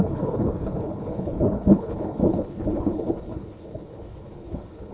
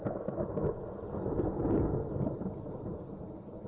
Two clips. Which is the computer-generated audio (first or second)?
first